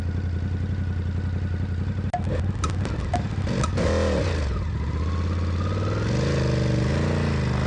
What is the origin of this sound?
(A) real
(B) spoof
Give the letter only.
A